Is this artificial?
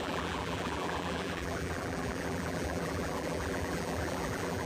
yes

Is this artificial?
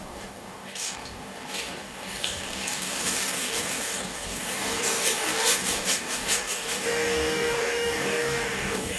yes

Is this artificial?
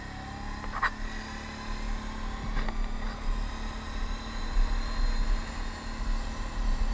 no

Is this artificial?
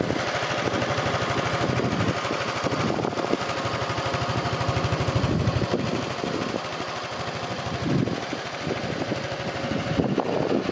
no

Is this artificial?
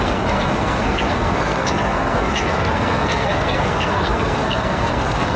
yes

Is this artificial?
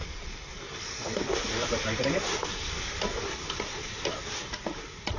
yes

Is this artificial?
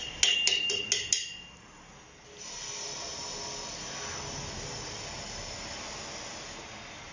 no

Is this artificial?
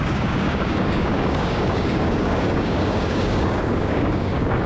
yes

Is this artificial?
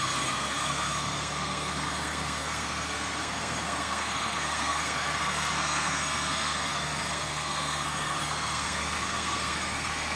yes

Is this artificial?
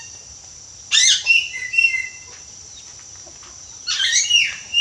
yes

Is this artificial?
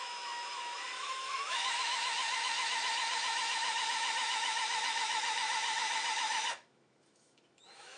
yes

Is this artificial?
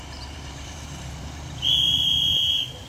yes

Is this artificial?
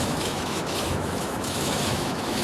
yes